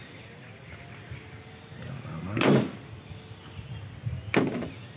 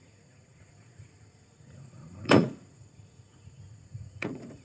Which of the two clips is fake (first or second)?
second